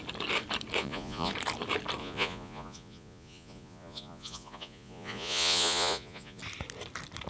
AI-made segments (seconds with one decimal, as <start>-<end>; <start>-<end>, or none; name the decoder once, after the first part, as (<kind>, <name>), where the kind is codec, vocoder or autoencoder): 0.8-1.3 (vocoder, Vocos); 2.0-6.4